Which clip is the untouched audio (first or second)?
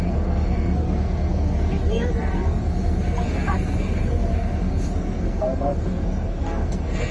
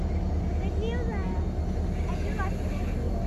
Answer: second